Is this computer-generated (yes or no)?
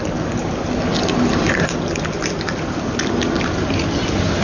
no